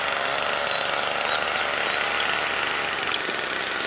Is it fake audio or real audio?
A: real